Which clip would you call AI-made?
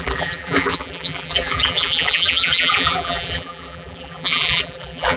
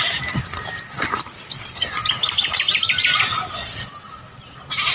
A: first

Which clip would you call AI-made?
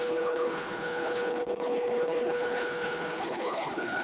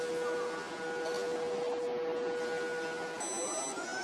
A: first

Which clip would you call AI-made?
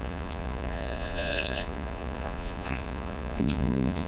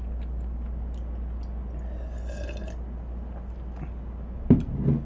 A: first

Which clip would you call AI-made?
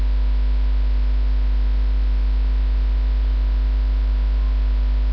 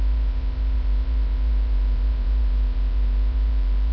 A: second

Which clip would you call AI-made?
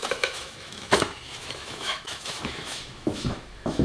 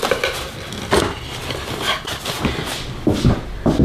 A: first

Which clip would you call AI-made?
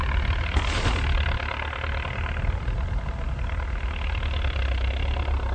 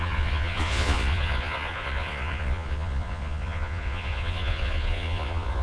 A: second